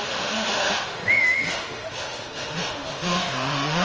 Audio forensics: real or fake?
fake